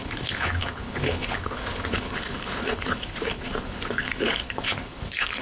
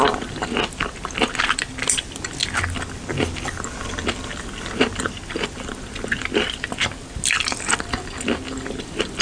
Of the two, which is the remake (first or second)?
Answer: first